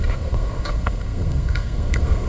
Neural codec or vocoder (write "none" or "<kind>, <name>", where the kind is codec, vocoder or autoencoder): codec, SNAC